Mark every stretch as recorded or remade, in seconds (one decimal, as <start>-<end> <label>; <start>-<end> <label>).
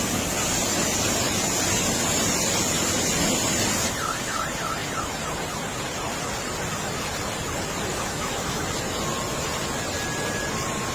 0.0-7.9 recorded; 7.9-8.6 remade; 8.6-10.9 recorded